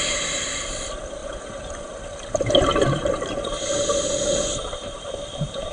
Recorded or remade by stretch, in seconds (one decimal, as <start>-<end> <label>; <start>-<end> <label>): 0.0-1.2 remade; 1.2-4.6 recorded; 4.6-5.7 remade